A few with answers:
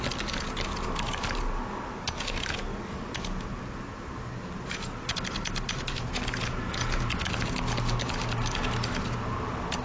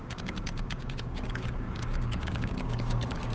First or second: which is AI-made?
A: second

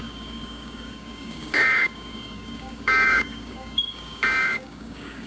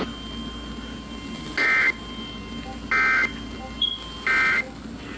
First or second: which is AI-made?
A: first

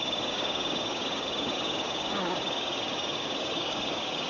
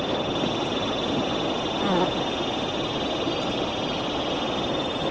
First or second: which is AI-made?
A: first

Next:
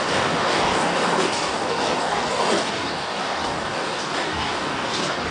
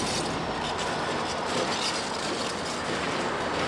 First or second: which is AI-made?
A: first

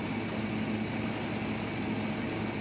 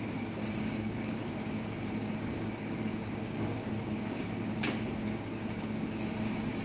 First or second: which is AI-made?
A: second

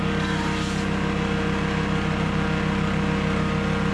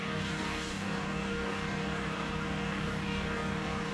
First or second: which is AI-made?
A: second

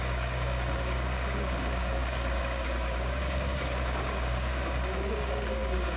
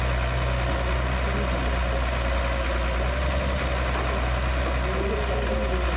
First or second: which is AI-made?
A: first